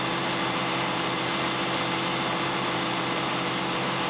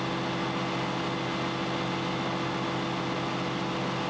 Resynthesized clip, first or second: first